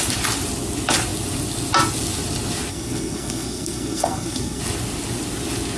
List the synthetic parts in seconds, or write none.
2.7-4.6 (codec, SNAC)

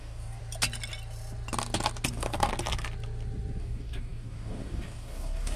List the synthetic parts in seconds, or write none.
0.0-0.4 (codec, DAC); 2.1-2.5; 3.6-5.6

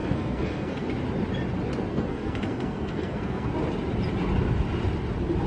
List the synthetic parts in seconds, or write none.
0.0-0.9 (codec, SNAC); 1.9-3.5

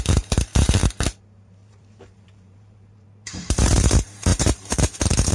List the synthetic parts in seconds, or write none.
0.0-0.8 (vocoder, BigVGAN v2); 1.4-5.3